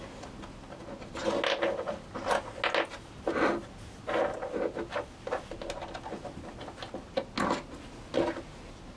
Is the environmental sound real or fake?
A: real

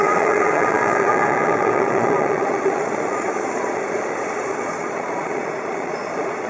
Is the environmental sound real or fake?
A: fake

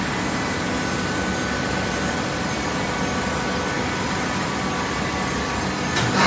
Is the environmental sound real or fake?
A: real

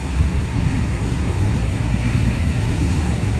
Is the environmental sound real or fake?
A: fake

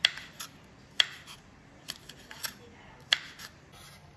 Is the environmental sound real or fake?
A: real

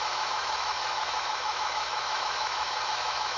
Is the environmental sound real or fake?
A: fake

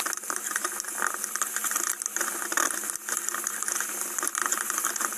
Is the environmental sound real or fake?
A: real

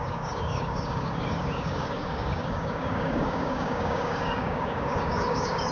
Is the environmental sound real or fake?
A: fake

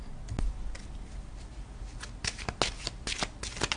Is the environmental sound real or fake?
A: real